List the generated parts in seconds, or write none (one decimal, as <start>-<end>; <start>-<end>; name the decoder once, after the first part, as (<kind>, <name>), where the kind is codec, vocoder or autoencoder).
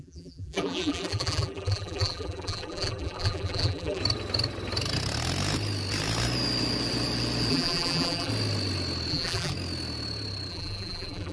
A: 0.0-4.0 (vocoder, BigVGAN v2); 7.5-8.3; 9.1-9.5; 10.5-11.3